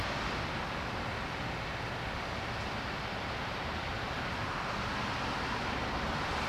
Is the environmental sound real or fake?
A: real